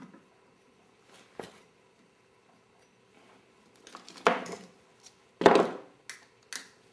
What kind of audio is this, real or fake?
real